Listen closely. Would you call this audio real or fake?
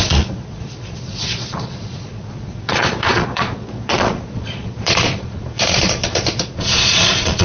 fake